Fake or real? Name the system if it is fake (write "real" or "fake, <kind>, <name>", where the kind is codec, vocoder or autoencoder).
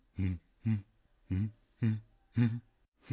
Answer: real